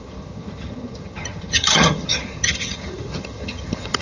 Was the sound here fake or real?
fake